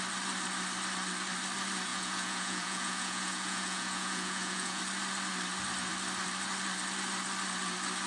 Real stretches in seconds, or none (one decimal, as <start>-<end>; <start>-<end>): 0.0-1.9; 4.8-8.1